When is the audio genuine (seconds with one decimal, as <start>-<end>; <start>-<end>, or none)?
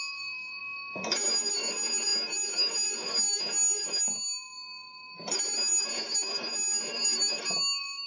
none